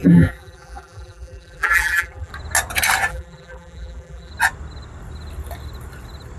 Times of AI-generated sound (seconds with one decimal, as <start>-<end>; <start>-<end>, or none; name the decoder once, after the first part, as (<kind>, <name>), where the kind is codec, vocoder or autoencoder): 0.0-2.3 (vocoder, BigVGAN v2); 3.1-4.3